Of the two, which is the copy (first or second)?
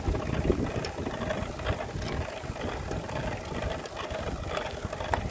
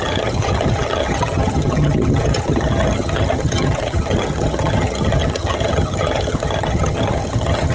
second